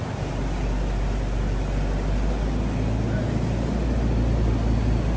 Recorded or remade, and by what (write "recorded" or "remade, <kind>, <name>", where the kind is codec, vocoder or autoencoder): recorded